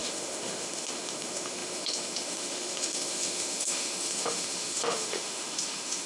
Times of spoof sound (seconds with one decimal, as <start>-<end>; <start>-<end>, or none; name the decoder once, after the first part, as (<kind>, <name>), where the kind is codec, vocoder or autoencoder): 0.0-6.1 (autoencoder, DAC-VAE)